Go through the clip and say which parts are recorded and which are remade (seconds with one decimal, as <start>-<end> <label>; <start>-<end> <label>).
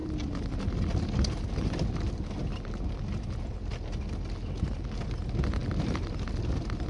0.0-4.1 remade; 4.1-5.6 recorded; 5.6-6.9 remade